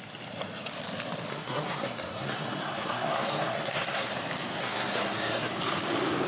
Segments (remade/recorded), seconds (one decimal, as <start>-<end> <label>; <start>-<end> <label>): 0.0-1.3 recorded; 1.3-4.1 remade; 4.1-4.6 recorded; 4.6-5.5 remade; 5.5-6.3 recorded